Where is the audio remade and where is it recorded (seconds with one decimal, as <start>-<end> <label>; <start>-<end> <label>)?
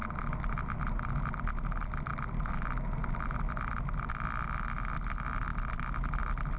0.0-6.6 recorded